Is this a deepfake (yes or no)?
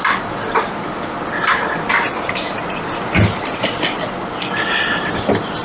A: no